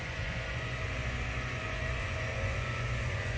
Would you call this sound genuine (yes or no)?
no